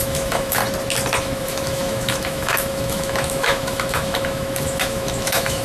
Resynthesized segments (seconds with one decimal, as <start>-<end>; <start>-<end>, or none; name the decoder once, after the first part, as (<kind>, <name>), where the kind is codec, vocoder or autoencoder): 0.0-0.6 (autoencoder, DAC-VAE); 1.2-5.6